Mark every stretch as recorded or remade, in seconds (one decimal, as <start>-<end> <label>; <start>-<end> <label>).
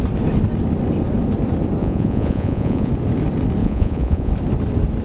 0.0-1.8 recorded; 1.8-2.9 remade; 2.9-3.6 recorded; 3.6-4.3 remade; 4.3-5.0 recorded